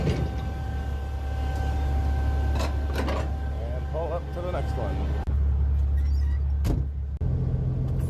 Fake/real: real